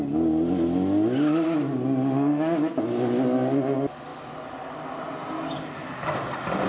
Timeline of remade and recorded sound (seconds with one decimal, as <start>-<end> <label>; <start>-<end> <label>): 0.0-6.7 recorded